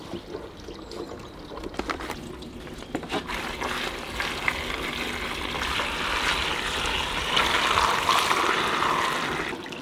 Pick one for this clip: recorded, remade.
recorded